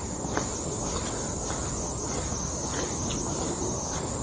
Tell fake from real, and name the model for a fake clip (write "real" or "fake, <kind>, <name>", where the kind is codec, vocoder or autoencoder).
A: real